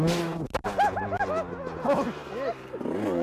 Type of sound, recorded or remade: recorded